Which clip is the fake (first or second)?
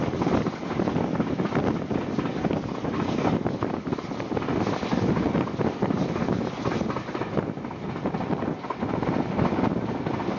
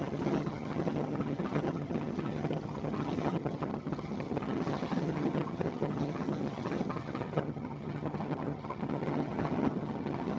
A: second